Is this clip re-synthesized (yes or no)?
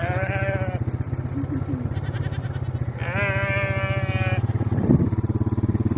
no